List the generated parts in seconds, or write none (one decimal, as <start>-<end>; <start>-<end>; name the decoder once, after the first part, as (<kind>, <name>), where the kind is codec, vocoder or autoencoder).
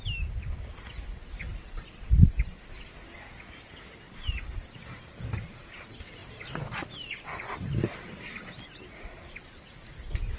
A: none